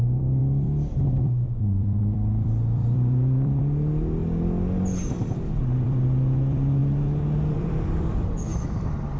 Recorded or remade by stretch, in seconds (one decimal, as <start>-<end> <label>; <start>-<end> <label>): 0.0-4.2 remade; 4.2-5.6 recorded; 5.6-6.8 remade; 6.8-7.5 recorded; 7.5-8.5 remade; 8.5-9.2 recorded